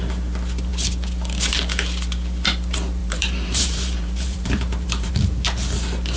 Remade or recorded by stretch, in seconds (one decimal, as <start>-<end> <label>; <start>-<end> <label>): 0.0-3.0 recorded; 3.0-5.1 remade; 5.1-6.2 recorded